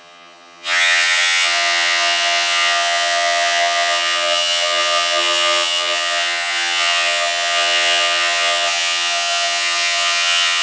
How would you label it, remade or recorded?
remade